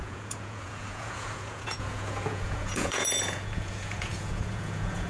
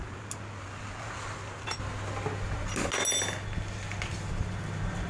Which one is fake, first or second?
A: first